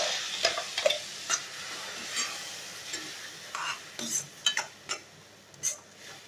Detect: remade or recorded recorded